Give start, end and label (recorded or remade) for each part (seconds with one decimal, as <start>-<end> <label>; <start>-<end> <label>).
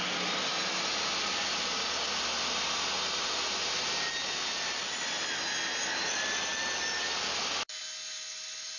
0.0-4.2 recorded; 4.2-5.5 remade; 5.5-6.5 recorded; 6.5-7.8 remade; 7.8-8.8 recorded